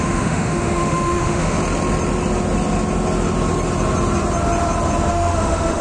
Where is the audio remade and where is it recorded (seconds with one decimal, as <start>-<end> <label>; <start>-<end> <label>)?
0.0-1.6 remade; 1.6-5.1 recorded; 5.1-5.8 remade